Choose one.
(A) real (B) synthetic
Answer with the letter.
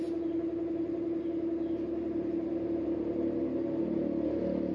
A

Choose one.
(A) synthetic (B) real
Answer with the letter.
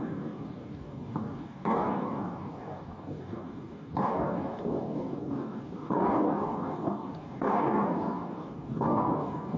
A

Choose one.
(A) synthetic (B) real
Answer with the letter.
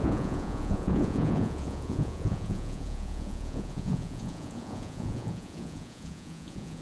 A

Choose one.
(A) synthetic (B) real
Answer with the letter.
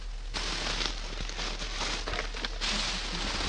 B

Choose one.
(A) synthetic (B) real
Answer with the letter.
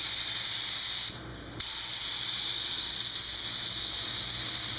B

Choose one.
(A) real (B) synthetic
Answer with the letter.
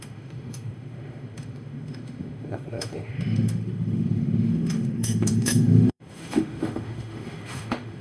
B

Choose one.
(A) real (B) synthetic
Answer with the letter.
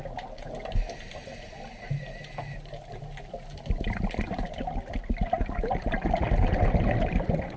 A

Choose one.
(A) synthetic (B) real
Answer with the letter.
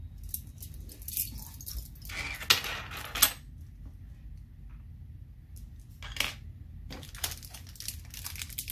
B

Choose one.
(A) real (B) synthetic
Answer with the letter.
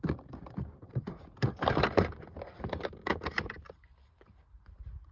B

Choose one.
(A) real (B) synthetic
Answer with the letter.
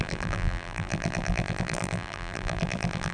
B